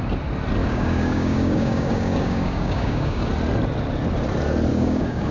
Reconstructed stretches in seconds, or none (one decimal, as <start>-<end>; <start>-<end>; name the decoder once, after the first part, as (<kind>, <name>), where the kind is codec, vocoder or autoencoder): 0.6-3.3 (codec, DAC); 4.7-5.3